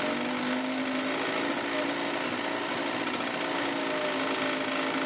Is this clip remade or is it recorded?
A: recorded